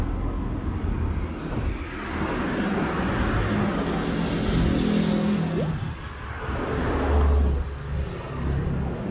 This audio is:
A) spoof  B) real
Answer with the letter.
B